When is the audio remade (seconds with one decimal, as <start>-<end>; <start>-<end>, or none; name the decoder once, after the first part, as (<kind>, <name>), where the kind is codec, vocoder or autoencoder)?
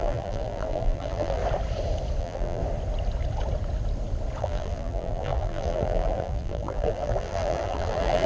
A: 0.0-1.4 (vocoder, BigVGAN v2); 2.2-2.6; 4.4-8.3